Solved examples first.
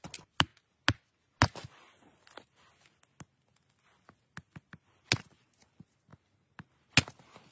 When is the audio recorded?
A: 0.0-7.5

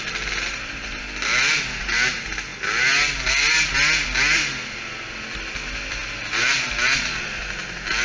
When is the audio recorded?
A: 0.0-8.0